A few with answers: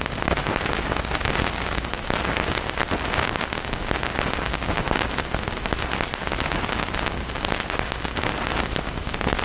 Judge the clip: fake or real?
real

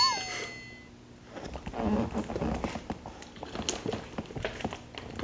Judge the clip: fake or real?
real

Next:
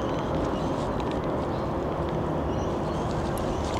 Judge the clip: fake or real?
real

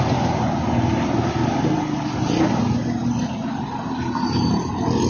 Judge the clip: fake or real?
real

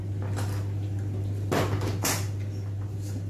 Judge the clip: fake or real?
real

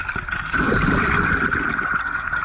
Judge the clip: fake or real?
real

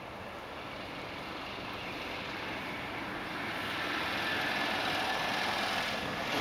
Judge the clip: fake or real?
real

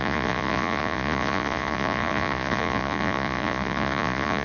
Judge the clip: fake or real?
fake